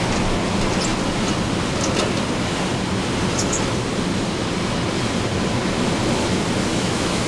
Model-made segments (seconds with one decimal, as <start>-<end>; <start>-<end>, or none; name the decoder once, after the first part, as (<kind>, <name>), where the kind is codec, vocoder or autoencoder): 6.7-7.3 (autoencoder, DAC-VAE)